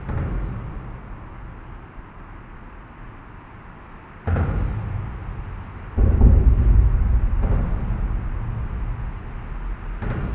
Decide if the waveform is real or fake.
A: real